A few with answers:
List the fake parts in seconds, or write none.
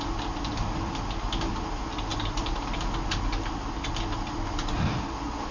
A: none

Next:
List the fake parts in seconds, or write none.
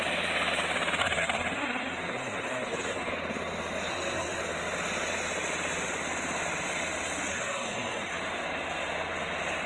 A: 1.0-3.1 (codec, SNAC); 3.9-4.4; 7.3-8.2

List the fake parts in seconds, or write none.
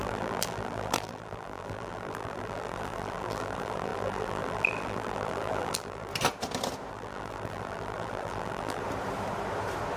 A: 0.0-6.1 (vocoder, BigVGAN v2); 6.9-8.8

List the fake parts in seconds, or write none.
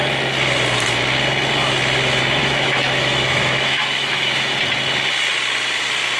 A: 2.4-4.6 (autoencoder, DAC-VAE)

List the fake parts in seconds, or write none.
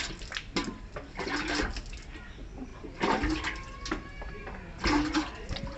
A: none